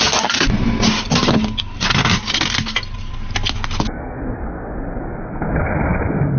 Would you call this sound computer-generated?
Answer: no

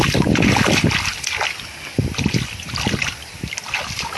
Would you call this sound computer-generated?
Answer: no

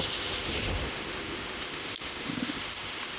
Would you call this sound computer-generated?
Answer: yes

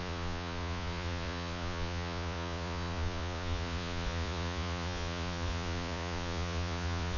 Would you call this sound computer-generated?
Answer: yes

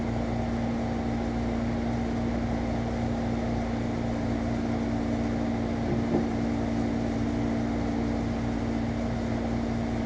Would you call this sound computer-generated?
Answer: no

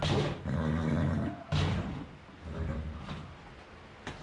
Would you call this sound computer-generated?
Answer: no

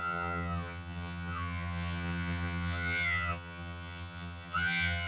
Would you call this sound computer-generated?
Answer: yes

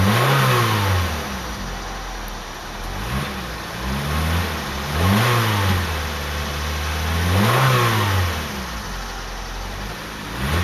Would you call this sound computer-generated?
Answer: no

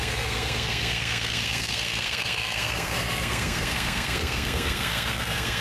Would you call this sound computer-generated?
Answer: yes